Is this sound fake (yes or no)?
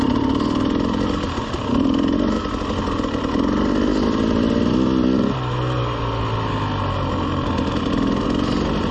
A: no